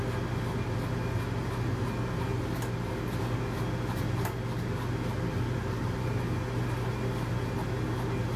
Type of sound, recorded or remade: recorded